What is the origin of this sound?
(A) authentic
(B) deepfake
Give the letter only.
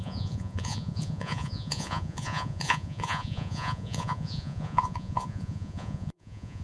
B